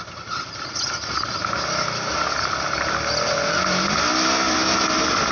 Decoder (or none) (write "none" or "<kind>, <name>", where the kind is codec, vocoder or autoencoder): none